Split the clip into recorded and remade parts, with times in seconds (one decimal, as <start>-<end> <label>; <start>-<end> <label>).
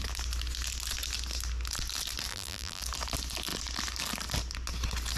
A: 0.0-2.3 recorded; 2.3-2.8 remade; 2.8-5.2 recorded